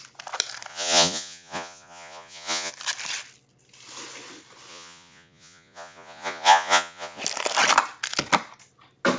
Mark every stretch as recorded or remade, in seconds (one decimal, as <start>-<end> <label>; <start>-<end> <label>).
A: 0.0-0.7 recorded; 0.7-2.7 remade; 2.7-4.7 recorded; 4.7-7.2 remade; 7.2-9.2 recorded

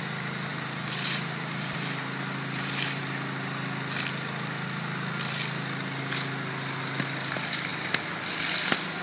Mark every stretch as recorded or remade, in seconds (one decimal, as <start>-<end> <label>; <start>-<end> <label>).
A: 0.0-0.5 recorded; 0.5-3.0 remade; 3.0-9.0 recorded